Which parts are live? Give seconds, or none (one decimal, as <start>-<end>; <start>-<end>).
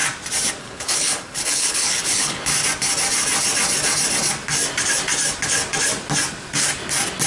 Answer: 0.0-0.6; 2.5-7.3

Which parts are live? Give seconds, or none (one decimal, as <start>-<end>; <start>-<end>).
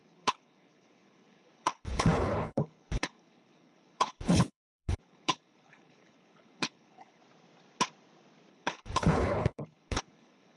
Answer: 7.2-8.5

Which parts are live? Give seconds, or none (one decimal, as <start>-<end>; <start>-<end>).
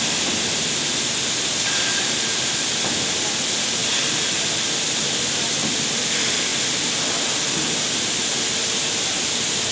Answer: 0.0-9.7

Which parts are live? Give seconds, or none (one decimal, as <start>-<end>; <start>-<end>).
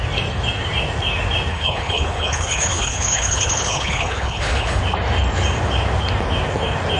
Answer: 0.0-1.5; 4.8-7.0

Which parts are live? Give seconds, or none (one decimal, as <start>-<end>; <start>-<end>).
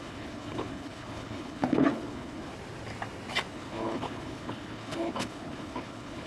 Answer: 2.5-3.5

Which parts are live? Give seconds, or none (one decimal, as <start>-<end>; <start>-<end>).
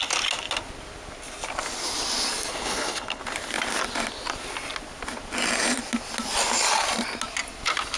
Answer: 0.0-2.5; 3.2-8.0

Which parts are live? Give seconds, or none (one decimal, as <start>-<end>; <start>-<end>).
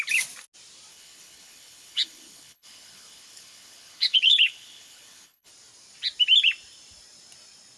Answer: 0.0-0.9; 5.5-7.8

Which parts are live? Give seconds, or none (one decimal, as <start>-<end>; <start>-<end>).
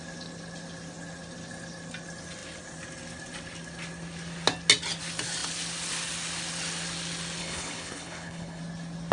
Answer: 0.0-7.4; 8.6-9.1